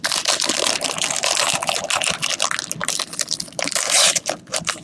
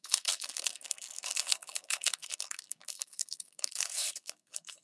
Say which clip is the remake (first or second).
second